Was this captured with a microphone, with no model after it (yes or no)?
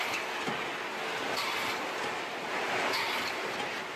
yes